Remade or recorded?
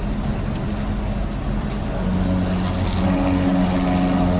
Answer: recorded